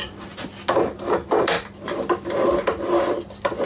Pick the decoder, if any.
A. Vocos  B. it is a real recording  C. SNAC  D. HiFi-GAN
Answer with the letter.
B